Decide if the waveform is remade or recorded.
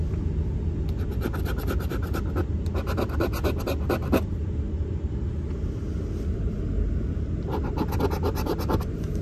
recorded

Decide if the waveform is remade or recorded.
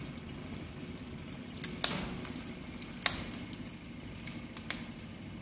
recorded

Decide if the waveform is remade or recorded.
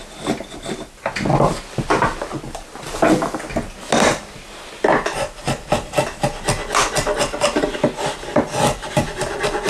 recorded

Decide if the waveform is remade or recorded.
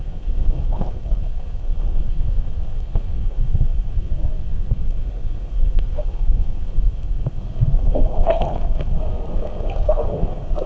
remade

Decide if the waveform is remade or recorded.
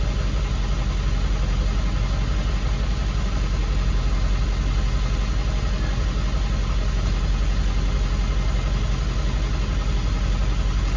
recorded